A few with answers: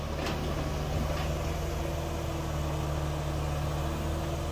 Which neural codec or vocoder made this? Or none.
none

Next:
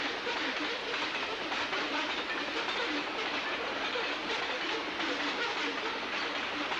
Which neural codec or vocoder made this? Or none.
vocoder, BigVGAN v2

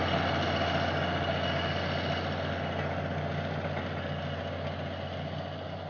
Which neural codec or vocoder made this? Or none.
none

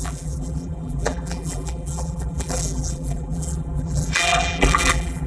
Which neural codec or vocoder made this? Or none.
vocoder, BigVGAN v2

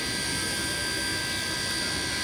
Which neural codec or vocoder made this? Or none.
none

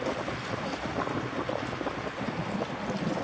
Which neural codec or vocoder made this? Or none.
none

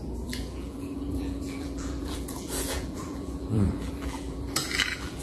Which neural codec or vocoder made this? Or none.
vocoder, BigVGAN v2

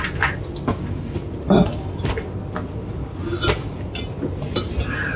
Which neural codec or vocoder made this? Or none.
none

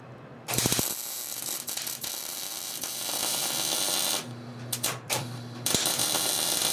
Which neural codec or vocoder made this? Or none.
vocoder, BigVGAN v2